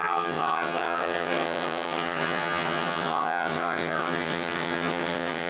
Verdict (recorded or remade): remade